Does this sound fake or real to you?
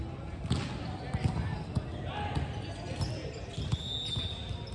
real